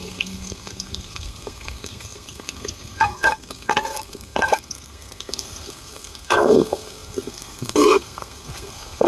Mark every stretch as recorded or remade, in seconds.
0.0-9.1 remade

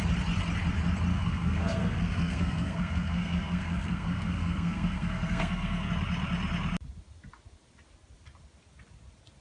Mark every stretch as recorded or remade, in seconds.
0.0-1.1 recorded; 1.1-5.9 remade; 5.9-9.4 recorded

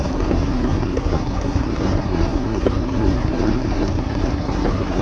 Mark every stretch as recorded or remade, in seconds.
0.0-5.0 remade